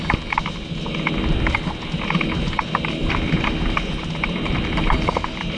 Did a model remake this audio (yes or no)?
no